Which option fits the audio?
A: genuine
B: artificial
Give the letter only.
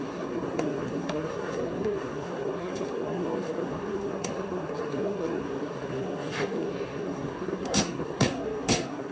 B